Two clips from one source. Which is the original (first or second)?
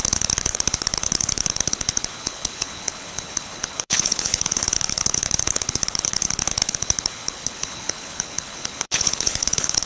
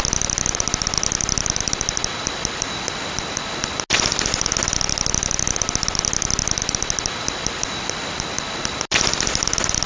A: second